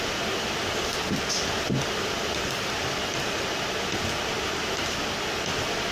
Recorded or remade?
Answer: recorded